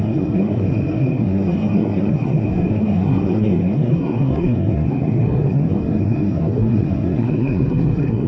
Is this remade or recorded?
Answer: remade